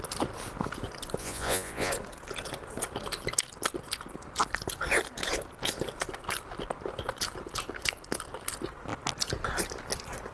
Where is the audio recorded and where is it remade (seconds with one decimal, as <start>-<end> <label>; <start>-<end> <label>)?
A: 0.0-1.2 recorded; 1.2-1.9 remade; 1.9-10.3 recorded